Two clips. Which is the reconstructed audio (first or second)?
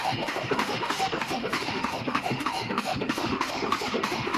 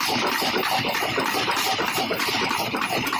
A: first